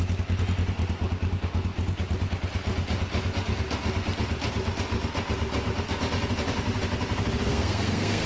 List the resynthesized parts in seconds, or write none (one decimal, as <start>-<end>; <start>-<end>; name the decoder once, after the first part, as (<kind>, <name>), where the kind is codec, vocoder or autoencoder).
7.5-8.3 (codec, SNAC)